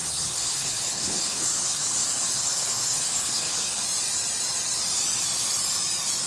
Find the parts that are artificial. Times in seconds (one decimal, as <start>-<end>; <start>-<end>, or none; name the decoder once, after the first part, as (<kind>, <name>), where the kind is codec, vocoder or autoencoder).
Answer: 0.0-3.8 (codec, HILCodec)